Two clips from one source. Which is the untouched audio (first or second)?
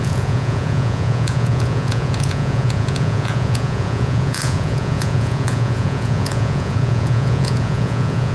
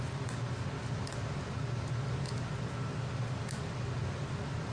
second